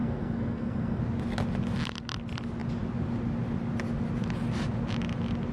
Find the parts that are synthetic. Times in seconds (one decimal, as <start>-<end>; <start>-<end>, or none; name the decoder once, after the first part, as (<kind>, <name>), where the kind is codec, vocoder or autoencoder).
0.0-1.0 (codec, SNAC)